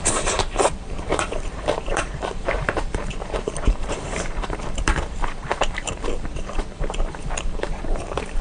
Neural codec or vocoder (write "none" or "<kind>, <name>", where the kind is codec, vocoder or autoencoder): vocoder, BigVGAN v2